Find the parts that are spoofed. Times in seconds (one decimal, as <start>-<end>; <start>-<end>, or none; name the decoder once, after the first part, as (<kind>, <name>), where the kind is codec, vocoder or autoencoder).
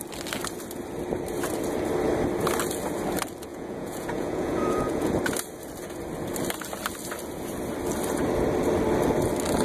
3.5-5.1 (vocoder, Vocos)